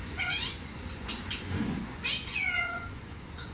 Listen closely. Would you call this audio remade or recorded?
remade